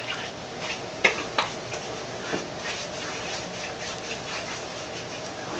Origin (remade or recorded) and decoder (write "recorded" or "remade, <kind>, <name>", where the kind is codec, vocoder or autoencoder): recorded